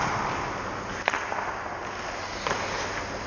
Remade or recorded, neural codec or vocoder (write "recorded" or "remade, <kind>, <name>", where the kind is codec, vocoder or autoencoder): recorded